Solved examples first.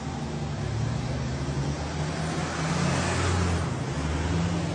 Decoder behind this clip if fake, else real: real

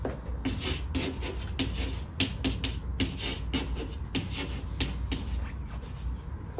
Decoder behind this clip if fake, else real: real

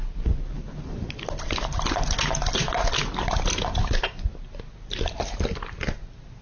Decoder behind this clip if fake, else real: real